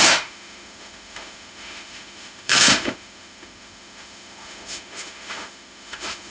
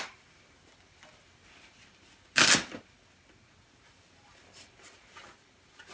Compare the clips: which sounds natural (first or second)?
second